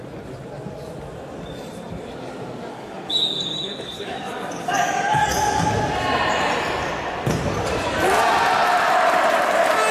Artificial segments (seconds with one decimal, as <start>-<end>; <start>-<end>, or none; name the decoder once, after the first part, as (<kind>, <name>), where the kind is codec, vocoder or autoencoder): 2.7-5.7 (codec, DAC)